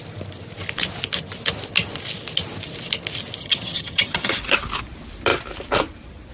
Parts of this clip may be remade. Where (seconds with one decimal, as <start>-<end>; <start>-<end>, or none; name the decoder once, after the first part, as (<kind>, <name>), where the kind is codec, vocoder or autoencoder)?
3.4-4.4 (vocoder, HiFi-GAN)